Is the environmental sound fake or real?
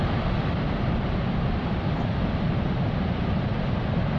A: fake